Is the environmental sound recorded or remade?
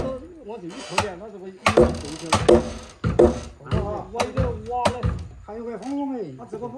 recorded